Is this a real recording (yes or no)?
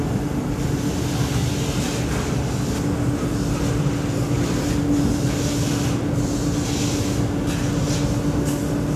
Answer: yes